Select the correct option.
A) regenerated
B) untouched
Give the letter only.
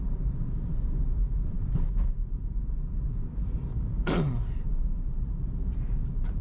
A